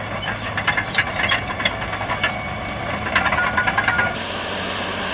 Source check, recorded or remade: recorded